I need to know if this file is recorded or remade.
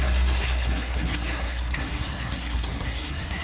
remade